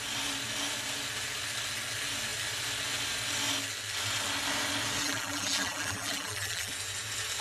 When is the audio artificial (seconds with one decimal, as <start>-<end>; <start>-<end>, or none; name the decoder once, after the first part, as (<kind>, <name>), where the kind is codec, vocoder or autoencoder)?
5.0-6.7 (vocoder, BigVGAN v2)